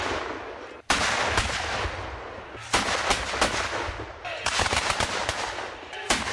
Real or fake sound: real